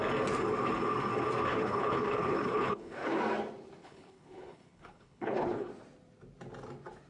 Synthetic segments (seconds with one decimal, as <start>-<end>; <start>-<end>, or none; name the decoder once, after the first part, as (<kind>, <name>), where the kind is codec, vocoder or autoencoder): 1.5-3.2 (codec, HILCodec); 3.8-5.7